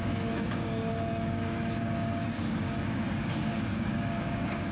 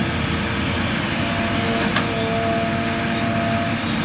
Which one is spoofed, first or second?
first